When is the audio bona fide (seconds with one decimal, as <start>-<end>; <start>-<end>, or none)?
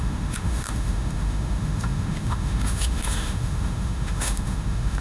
none